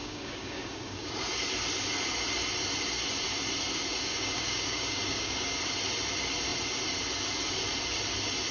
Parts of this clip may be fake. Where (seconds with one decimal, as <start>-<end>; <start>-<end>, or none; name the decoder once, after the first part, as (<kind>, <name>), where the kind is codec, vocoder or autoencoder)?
0.0-1.1 (codec, DAC); 4.1-5.6

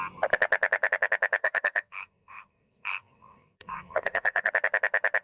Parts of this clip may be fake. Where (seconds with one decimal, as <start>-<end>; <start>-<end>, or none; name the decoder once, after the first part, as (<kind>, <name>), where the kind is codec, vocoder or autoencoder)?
1.4-4.5 (codec, SNAC)

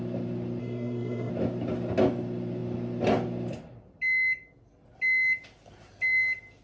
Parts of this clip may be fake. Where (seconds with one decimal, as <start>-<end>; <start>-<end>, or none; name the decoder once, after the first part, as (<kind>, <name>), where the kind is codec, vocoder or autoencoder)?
0.6-1.3 (codec, SNAC)

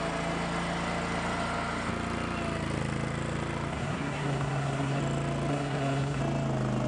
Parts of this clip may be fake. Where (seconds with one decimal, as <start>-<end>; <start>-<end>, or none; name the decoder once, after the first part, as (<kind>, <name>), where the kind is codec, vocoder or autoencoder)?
3.7-5.0 (codec, SNAC); 5.5-6.2

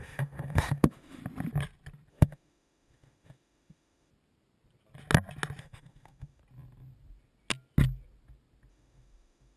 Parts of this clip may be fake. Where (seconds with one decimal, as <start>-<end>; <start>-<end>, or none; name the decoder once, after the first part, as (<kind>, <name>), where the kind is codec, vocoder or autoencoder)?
0.0-1.2 (autoencoder, DAC-VAE); 2.1-4.1; 5.6-6.4; 8.7-9.6